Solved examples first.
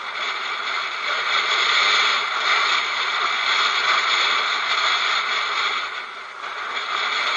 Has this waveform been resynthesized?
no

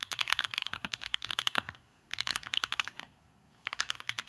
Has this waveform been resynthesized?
yes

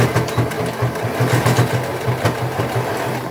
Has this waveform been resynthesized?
no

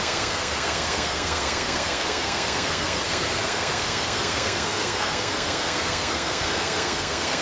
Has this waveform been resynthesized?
yes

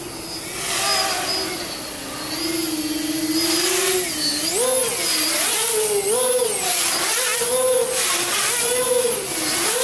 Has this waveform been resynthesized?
no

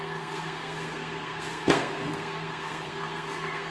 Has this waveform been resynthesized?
yes